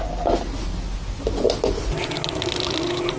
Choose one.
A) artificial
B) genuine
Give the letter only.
B